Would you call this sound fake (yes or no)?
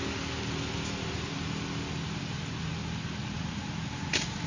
no